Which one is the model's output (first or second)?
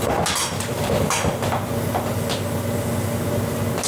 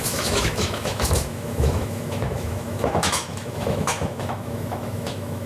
second